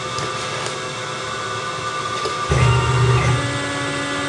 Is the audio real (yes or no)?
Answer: yes